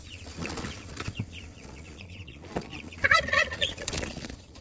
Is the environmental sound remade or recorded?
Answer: remade